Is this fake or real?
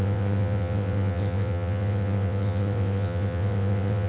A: fake